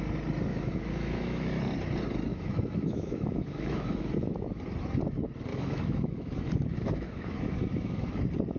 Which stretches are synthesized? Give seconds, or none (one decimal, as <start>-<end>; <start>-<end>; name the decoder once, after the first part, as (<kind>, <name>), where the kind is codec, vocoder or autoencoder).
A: 0.5-1.6 (autoencoder, DAC-VAE); 2.3-4.6; 5.5-8.2